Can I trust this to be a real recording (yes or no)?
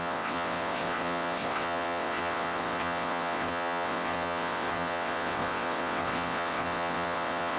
no